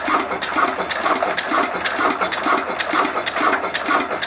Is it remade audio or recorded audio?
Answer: recorded